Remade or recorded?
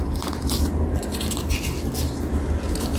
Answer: recorded